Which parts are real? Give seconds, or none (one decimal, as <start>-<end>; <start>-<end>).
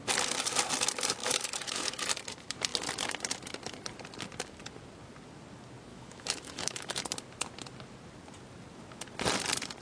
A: 0.0-1.2; 2.0-5.9; 7.1-9.8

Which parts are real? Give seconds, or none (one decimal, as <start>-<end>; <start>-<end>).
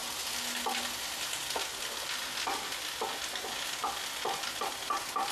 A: 0.0-5.3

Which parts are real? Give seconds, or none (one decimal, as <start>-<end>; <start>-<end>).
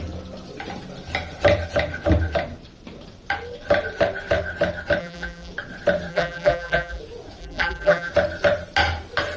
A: 0.0-5.0; 5.5-6.1; 7.0-7.4; 8.1-9.4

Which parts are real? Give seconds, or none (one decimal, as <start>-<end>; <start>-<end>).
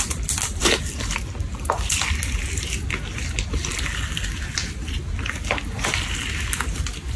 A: 0.0-7.2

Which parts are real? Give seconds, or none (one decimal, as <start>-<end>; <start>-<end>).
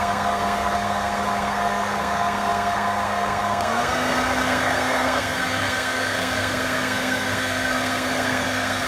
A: none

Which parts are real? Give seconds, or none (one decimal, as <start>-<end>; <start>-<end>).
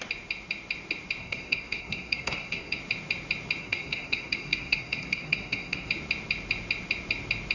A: 0.0-1.2; 2.8-3.6; 5.9-7.5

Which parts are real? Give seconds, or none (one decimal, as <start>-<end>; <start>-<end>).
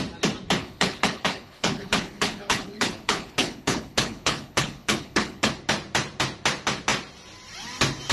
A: 0.0-0.6; 5.5-8.1